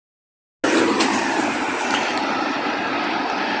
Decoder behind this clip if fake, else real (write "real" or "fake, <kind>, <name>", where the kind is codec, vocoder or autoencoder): real